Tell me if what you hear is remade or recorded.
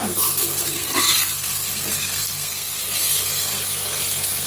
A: remade